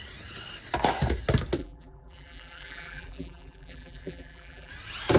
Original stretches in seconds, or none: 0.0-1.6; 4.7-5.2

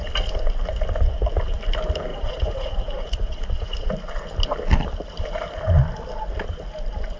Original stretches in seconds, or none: 0.0-2.1; 3.9-7.2

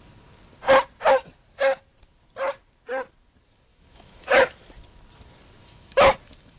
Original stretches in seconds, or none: 0.0-3.7; 4.6-5.6

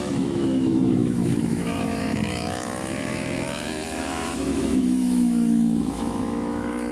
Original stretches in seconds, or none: none

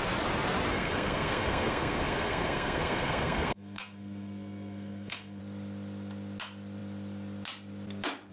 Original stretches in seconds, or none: 0.0-0.7; 5.4-8.3